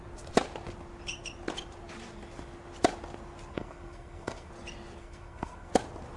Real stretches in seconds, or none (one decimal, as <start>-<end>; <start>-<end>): 0.0-3.5; 4.5-5.0; 5.7-6.2